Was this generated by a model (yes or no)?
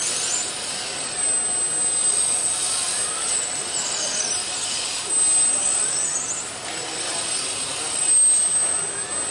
no